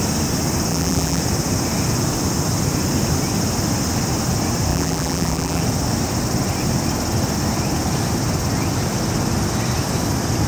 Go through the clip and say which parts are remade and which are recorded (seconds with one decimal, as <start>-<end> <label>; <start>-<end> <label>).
0.0-0.7 recorded; 0.7-1.2 remade; 1.2-4.7 recorded; 4.7-5.6 remade; 5.6-10.5 recorded